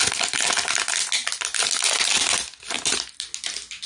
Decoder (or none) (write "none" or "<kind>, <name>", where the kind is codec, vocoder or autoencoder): none